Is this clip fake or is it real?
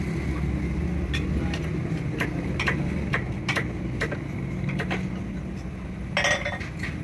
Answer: real